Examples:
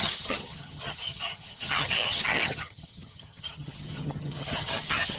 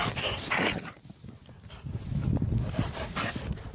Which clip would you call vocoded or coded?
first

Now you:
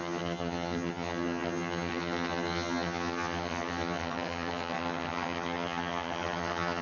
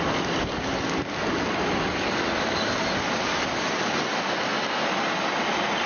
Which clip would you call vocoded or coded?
first